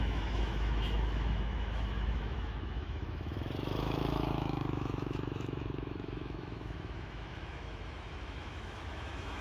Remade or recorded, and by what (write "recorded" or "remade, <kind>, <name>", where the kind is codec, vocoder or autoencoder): remade, autoencoder, DAC-VAE